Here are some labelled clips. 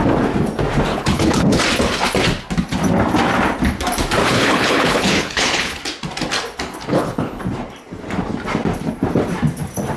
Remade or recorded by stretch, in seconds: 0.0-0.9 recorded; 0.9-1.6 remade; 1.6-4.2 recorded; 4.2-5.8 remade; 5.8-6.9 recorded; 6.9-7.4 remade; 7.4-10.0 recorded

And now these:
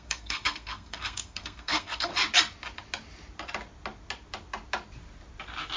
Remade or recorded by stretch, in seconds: 0.0-2.1 remade; 2.1-5.8 recorded

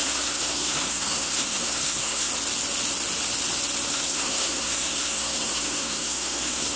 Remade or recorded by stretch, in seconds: 0.0-2.3 remade; 2.3-3.9 recorded; 3.9-6.8 remade

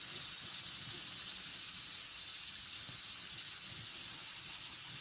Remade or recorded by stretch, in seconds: 0.0-5.0 recorded